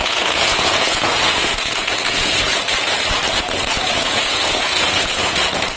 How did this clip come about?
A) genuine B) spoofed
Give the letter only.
B